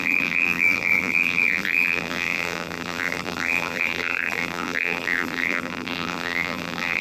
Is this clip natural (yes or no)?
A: no